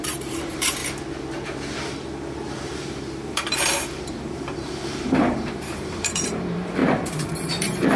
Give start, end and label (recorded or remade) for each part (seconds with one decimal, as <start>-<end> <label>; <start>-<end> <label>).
0.0-0.8 remade; 0.8-2.6 recorded; 2.6-6.8 remade; 6.8-7.3 recorded; 7.3-8.0 remade